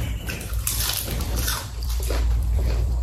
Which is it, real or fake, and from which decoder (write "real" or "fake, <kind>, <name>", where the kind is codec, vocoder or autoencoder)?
fake, vocoder, BigVGAN v2